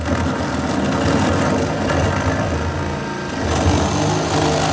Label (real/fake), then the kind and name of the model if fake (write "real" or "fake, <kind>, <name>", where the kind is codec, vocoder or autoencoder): real